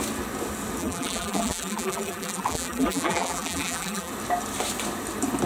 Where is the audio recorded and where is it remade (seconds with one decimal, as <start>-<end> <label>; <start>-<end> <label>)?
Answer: 0.0-0.8 recorded; 0.8-4.1 remade; 4.1-5.5 recorded